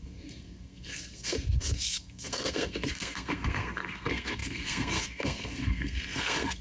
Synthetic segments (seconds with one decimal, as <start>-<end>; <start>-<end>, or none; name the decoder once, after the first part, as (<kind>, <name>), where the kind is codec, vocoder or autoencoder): 0.0-6.6 (codec, SNAC)